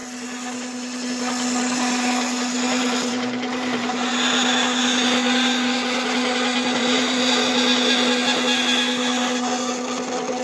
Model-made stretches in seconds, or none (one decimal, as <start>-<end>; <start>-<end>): 2.5-4.1; 6.8-7.5